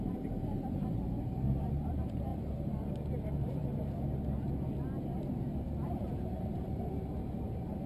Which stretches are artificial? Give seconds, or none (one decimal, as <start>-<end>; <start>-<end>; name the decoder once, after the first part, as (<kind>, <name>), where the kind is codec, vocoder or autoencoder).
0.0-3.6 (vocoder, BigVGAN v2); 5.2-7.9